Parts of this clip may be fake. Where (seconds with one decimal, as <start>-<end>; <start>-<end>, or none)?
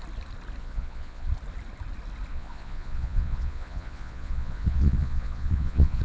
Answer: 0.6-1.3; 2.3-6.0